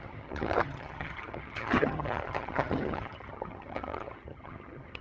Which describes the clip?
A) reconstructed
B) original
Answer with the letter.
A